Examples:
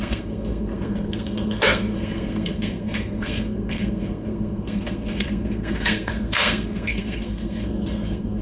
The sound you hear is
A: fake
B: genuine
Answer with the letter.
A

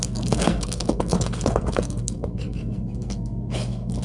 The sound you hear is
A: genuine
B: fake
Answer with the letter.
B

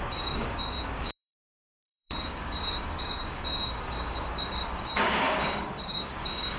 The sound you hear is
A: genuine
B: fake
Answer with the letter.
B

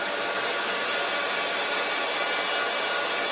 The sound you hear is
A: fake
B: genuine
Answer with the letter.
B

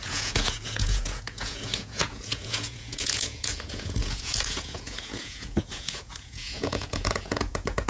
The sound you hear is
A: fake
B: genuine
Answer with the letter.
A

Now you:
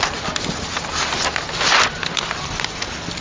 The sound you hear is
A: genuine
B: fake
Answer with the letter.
A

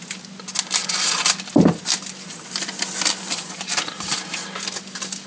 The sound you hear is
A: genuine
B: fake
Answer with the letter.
A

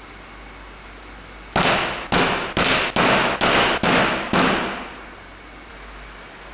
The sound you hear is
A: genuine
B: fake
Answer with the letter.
A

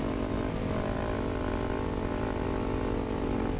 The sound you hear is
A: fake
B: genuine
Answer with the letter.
B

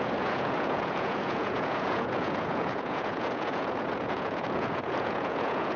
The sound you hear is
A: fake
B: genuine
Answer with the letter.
A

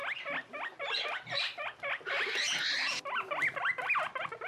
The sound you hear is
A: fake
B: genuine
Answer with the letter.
B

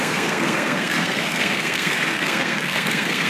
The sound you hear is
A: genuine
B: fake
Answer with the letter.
B